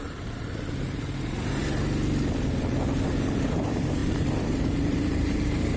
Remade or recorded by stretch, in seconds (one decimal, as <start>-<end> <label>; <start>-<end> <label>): 0.0-1.6 remade; 1.6-3.4 recorded; 3.4-5.8 remade